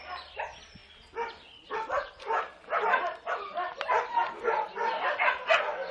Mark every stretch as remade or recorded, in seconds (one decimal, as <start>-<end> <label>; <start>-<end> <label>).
0.0-5.9 recorded